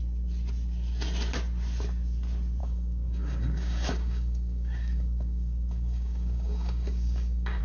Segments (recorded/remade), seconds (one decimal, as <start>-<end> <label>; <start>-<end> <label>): 0.0-2.6 recorded; 2.6-7.6 remade